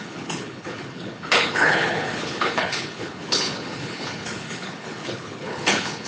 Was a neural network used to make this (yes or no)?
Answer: yes